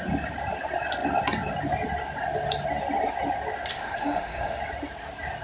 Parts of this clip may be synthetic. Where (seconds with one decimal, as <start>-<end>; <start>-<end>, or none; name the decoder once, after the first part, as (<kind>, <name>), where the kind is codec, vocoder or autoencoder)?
3.7-4.6 (autoencoder, DAC-VAE)